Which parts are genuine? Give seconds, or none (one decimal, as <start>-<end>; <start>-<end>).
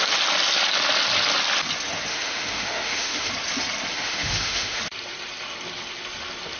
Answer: 0.0-2.1; 3.3-3.9; 4.8-6.6